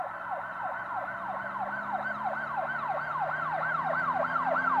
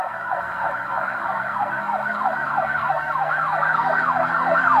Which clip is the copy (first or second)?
second